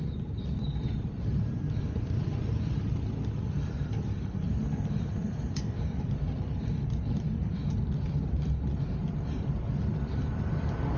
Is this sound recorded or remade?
remade